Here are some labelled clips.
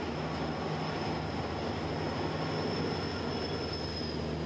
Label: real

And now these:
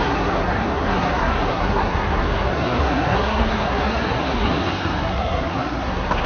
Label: fake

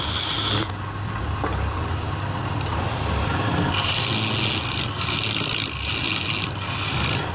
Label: real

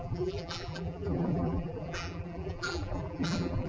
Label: fake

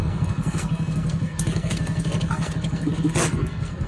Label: fake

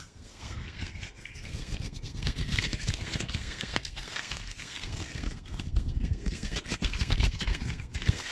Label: fake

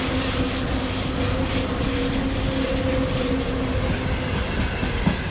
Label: real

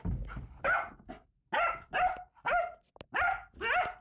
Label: real